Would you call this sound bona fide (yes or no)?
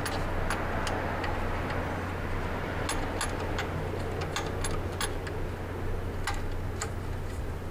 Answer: yes